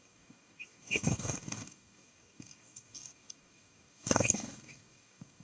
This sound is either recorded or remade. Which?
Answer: remade